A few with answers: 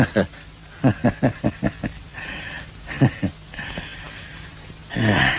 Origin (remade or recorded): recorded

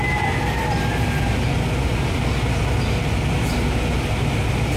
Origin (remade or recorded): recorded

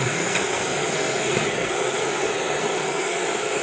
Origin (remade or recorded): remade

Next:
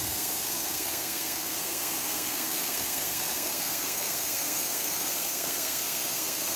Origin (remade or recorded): remade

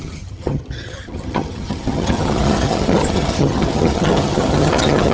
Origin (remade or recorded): remade